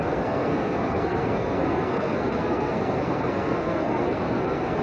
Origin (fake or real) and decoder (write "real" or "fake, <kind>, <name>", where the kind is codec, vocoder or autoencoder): fake, codec, SNAC